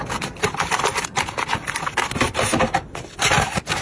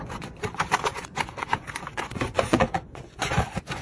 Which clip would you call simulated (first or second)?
second